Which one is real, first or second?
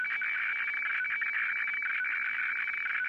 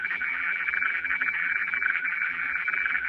first